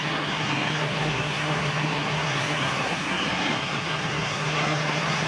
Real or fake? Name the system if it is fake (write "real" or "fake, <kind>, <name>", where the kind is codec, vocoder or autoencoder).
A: fake, codec, SNAC